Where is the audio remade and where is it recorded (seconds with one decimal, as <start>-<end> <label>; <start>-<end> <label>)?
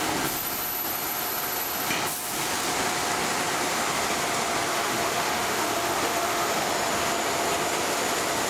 0.0-4.7 recorded; 4.7-6.7 remade; 6.7-8.5 recorded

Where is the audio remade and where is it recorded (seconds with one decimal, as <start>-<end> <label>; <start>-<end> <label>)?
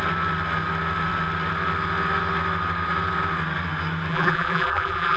0.0-4.1 recorded; 4.1-5.2 remade